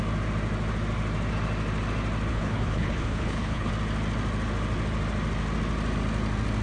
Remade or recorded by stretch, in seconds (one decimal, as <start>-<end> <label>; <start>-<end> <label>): 0.0-2.3 recorded; 2.3-3.7 remade; 3.7-6.6 recorded